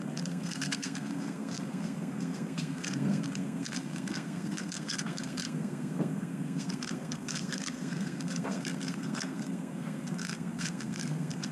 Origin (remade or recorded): remade